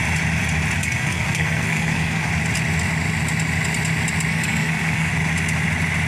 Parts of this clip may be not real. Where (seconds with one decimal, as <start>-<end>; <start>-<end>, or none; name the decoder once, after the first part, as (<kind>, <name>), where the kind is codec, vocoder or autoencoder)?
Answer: 0.8-2.3 (codec, SNAC); 4.3-5.1